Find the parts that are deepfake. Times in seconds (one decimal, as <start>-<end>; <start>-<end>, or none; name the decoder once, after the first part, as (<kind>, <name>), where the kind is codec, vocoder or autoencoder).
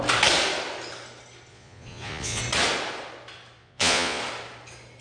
1.5-2.4 (vocoder, Vocos); 3.6-4.2